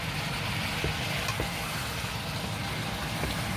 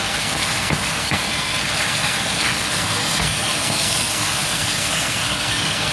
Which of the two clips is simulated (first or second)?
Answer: second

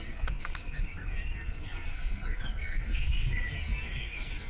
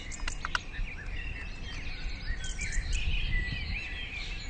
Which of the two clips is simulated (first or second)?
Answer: first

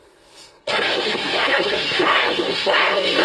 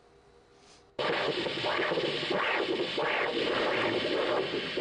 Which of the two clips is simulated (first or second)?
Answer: first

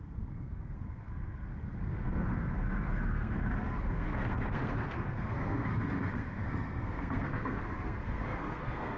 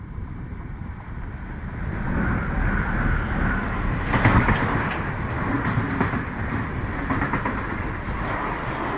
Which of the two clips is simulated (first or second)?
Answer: first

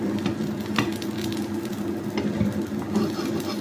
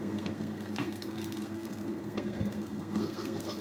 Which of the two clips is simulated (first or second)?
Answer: second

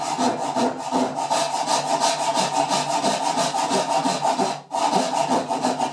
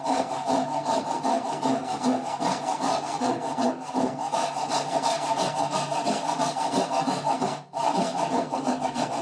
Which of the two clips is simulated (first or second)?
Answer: second